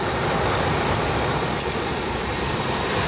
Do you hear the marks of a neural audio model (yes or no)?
yes